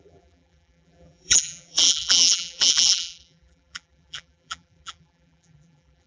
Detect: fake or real fake